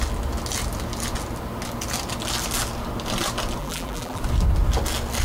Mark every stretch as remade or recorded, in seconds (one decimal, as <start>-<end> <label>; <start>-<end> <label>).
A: 0.0-3.6 recorded; 3.6-4.2 remade; 4.2-5.2 recorded